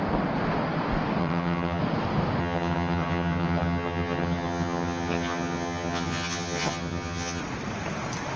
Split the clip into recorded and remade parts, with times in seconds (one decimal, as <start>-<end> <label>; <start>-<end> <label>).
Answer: 0.0-1.2 recorded; 1.2-1.8 remade; 1.8-2.4 recorded; 2.4-7.4 remade; 7.4-8.4 recorded